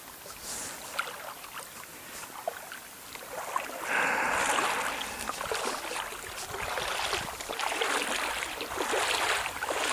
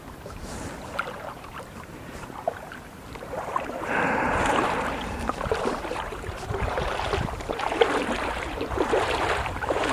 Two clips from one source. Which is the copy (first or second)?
second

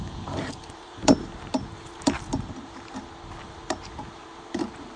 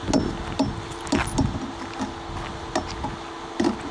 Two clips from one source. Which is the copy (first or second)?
first